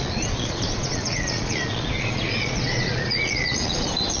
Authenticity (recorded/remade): remade